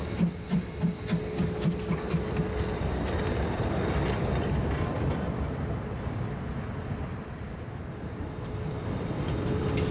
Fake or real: real